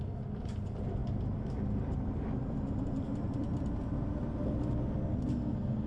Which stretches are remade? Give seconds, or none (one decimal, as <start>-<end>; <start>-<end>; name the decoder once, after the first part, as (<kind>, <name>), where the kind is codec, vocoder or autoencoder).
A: 1.0-4.4 (vocoder, BigVGAN v2)